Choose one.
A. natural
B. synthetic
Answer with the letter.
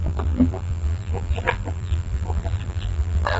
B